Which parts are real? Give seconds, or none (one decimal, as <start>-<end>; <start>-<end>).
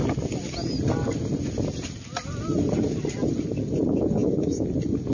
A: 0.0-5.1